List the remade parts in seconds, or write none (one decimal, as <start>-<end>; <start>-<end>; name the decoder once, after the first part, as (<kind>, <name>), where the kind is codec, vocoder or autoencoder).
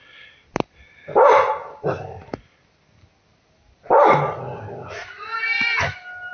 none